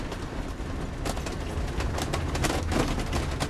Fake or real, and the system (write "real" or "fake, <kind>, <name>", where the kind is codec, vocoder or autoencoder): real